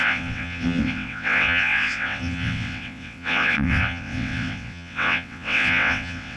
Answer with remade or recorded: remade